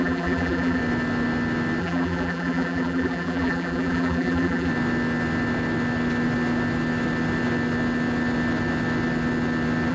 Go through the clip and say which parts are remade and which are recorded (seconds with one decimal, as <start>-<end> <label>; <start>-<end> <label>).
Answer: 0.0-0.8 remade; 0.8-1.8 recorded; 1.8-4.7 remade; 4.7-9.9 recorded